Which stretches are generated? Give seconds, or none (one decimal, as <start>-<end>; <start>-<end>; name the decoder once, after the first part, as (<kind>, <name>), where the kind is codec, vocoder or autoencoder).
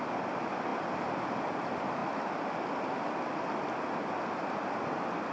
none